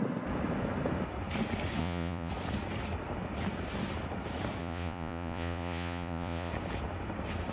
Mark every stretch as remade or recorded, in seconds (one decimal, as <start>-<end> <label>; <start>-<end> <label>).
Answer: 0.0-1.8 recorded; 1.8-2.3 remade; 2.3-4.6 recorded; 4.6-6.5 remade; 6.5-7.5 recorded